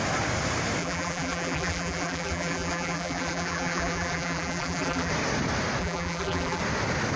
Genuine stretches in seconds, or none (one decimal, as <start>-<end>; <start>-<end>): 0.0-0.8; 5.1-5.8; 6.6-7.2